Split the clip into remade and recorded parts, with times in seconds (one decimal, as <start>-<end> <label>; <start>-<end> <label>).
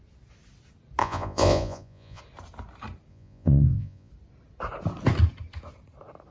0.0-1.0 recorded; 1.0-2.2 remade; 2.2-3.1 recorded; 3.1-4.1 remade; 4.1-6.3 recorded